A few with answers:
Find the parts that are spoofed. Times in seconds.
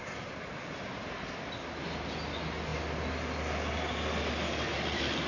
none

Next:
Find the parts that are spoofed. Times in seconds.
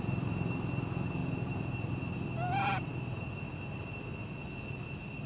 none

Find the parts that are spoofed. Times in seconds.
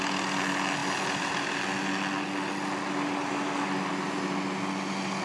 none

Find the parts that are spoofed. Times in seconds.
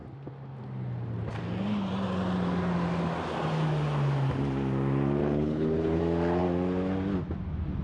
5.2-6.0 (codec, HILCodec)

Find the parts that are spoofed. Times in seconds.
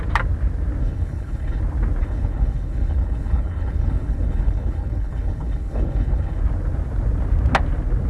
0.8-1.6 (codec, HILCodec); 2.0-6.4